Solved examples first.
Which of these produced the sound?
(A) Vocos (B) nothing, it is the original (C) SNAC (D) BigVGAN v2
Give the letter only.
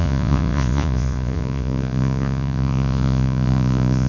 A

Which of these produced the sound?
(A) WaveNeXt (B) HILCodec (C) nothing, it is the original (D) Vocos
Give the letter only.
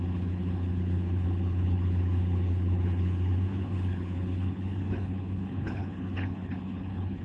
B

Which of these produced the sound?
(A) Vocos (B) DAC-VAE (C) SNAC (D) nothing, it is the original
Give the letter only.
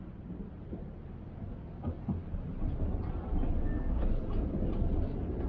D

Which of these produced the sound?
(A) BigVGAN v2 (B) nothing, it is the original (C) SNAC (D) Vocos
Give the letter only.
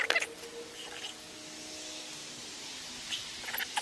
B